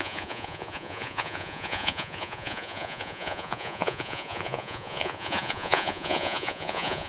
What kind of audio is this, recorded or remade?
remade